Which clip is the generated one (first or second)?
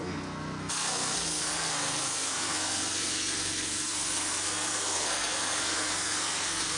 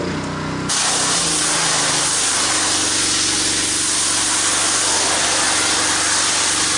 first